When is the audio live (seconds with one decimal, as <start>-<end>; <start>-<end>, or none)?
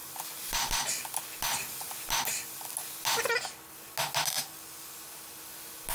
1.0-5.9